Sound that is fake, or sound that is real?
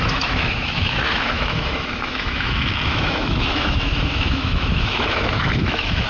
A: fake